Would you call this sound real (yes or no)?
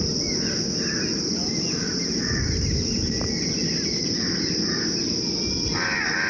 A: yes